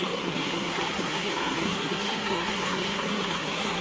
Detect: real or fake fake